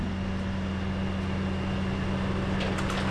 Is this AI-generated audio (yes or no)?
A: no